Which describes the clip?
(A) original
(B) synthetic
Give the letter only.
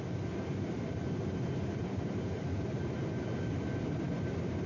B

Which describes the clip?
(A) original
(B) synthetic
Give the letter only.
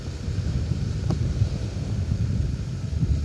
B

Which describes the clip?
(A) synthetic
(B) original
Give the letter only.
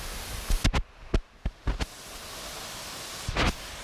B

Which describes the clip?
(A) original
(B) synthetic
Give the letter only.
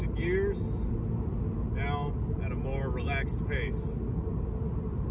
A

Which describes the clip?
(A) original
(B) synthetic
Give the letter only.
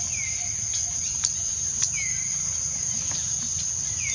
A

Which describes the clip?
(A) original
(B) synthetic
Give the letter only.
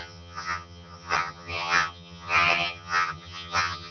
B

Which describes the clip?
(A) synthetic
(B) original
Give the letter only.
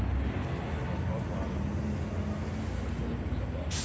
B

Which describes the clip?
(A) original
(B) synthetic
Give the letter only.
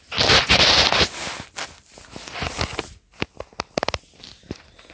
A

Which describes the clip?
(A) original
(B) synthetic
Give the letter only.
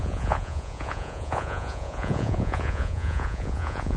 B